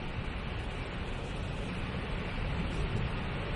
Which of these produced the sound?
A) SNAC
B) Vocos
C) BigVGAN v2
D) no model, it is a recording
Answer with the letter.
D